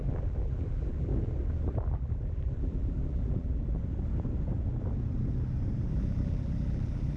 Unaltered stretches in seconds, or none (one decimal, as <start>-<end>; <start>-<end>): 1.1-1.8; 3.8-5.9